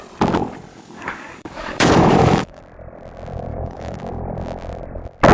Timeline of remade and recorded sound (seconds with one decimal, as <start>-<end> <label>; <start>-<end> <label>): 0.0-0.7 recorded; 0.7-2.6 remade; 2.6-3.5 recorded; 3.5-4.0 remade; 4.0-5.3 recorded